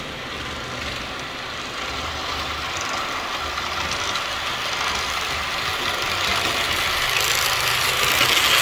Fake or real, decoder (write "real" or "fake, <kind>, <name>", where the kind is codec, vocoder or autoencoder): real